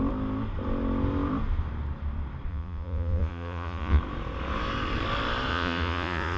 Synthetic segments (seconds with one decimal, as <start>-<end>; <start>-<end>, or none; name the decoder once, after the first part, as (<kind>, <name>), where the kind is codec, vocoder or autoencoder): 2.5-4.0 (vocoder, Vocos); 5.5-6.4